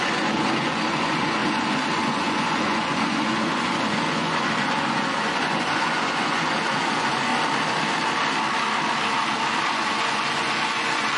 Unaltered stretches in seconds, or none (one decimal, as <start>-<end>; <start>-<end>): 7.3-9.7